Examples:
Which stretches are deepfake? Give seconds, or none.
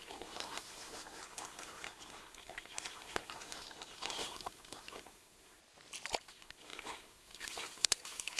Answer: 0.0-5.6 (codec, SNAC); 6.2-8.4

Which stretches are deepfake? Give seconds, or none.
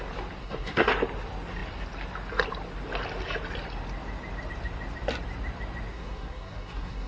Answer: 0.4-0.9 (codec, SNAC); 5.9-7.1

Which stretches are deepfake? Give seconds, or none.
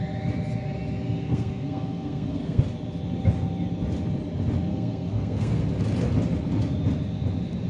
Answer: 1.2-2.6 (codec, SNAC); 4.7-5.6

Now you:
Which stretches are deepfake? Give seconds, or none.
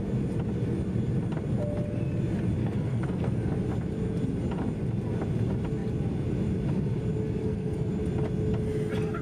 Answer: 2.6-3.5 (codec, SNAC); 7.4-7.9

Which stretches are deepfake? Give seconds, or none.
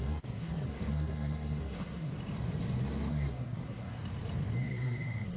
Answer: 0.0-2.1 (codec, SNAC); 3.1-4.0; 4.6-5.4